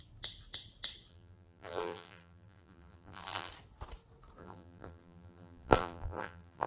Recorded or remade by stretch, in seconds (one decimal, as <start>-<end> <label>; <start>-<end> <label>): 0.0-1.1 recorded; 1.1-3.5 remade; 3.5-4.4 recorded; 4.4-6.7 remade